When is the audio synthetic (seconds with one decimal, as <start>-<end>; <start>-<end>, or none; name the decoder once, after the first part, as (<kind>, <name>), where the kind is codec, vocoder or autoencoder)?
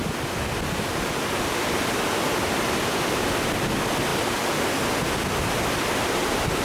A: none